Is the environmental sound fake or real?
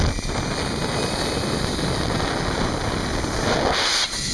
real